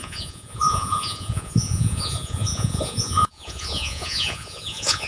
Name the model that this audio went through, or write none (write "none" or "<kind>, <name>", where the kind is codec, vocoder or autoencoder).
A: vocoder, Vocos